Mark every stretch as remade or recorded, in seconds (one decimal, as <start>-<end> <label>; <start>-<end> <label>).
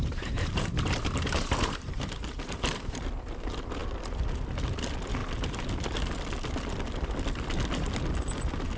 0.0-3.0 remade; 3.0-8.8 recorded